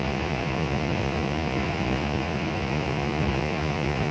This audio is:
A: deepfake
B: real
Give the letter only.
A